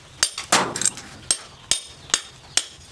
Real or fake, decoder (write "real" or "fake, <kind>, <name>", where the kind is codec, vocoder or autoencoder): real